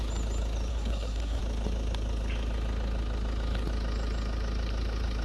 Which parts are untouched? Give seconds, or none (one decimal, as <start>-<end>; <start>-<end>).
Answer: 0.0-0.7; 1.4-5.2